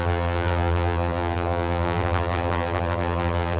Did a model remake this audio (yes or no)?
yes